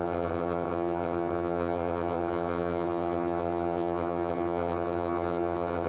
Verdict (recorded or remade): remade